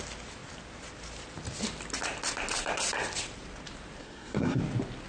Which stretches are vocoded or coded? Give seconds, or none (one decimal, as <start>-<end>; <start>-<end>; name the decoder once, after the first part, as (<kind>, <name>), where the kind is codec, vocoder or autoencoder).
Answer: 4.0-4.6 (codec, SNAC)